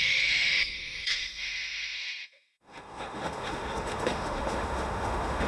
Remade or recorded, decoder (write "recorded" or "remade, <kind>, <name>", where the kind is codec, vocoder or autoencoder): remade, autoencoder, DAC-VAE